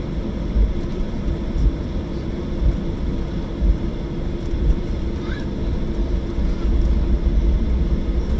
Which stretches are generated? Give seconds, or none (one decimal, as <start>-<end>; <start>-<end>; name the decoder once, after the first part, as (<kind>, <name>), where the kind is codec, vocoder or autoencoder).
0.9-5.6 (vocoder, BigVGAN v2)